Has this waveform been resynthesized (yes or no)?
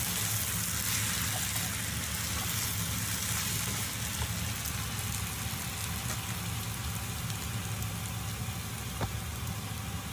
no